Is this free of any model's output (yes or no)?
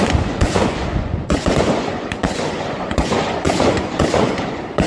no